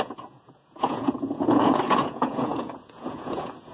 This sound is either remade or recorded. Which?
remade